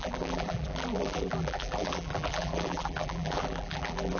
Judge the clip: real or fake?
fake